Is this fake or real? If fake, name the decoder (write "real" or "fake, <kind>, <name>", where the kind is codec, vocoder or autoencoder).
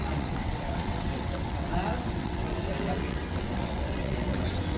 fake, vocoder, WaveNeXt